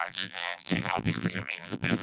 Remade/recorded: remade